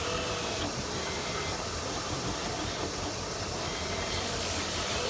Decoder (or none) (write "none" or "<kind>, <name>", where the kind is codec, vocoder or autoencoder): none